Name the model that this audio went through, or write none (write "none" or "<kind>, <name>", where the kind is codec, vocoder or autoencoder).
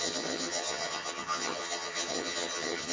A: vocoder, HiFi-GAN